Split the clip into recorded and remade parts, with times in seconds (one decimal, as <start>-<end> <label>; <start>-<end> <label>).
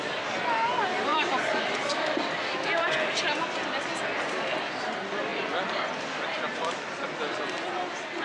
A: 0.0-1.1 recorded; 1.1-2.3 remade; 2.3-5.3 recorded; 5.3-6.1 remade; 6.1-8.2 recorded